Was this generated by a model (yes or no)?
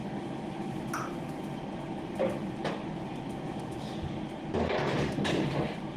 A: no